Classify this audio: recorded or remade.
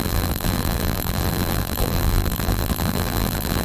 remade